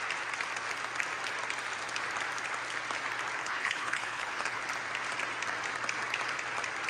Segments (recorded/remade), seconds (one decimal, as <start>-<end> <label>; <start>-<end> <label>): 0.0-3.4 recorded; 3.4-4.6 remade; 4.6-6.9 recorded